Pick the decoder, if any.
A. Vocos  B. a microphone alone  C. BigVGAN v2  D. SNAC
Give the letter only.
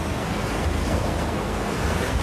D